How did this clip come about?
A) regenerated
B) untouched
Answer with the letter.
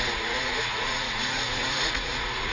A